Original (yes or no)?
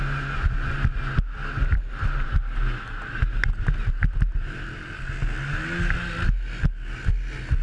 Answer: yes